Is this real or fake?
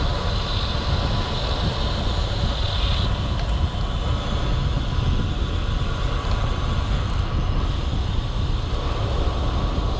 real